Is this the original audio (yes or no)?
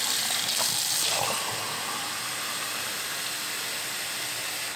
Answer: yes